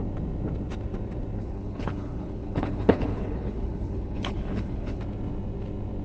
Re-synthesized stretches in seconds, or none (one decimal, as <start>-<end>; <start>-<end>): 1.4-5.0